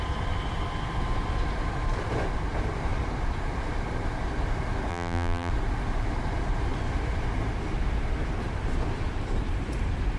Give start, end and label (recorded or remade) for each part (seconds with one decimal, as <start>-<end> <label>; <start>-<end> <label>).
0.0-4.9 recorded; 4.9-5.5 remade; 5.5-10.2 recorded